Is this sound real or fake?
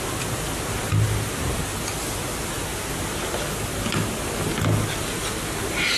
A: real